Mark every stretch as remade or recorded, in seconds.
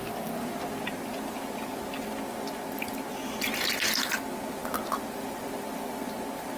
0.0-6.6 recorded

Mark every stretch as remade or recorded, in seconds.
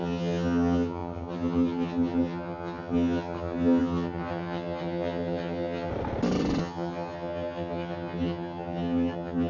0.0-5.9 remade; 5.9-6.6 recorded; 6.6-9.5 remade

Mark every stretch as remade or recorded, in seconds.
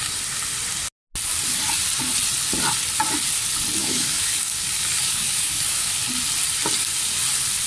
0.0-3.8 recorded; 3.8-5.9 remade; 5.9-7.7 recorded